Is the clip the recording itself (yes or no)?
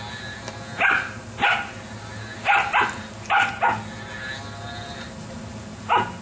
yes